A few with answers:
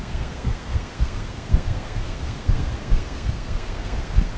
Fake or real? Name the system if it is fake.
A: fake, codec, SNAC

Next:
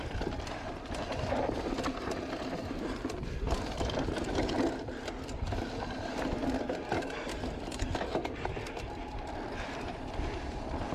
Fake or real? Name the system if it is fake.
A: real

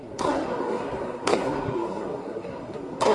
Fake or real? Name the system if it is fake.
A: fake, codec, SNAC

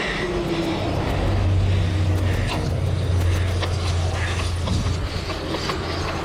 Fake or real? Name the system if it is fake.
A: real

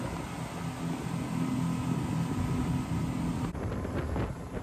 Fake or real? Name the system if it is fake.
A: real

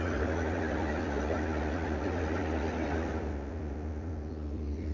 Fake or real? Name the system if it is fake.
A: fake, vocoder, Vocos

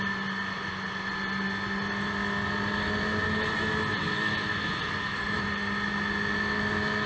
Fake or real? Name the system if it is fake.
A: real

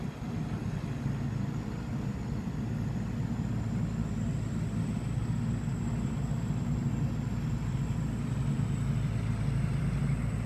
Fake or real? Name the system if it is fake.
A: real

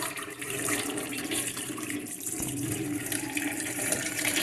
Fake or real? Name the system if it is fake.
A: fake, vocoder, BigVGAN v2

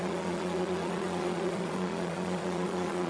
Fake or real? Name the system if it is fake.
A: fake, vocoder, Vocos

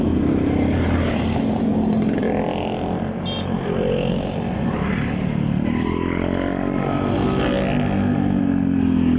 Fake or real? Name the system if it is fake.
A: real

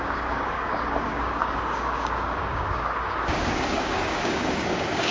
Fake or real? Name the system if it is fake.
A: fake, codec, DAC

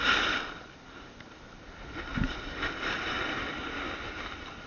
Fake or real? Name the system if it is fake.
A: real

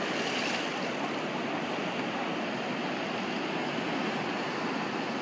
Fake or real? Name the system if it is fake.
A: real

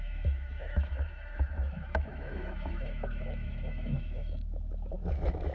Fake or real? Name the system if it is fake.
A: fake, autoencoder, DAC-VAE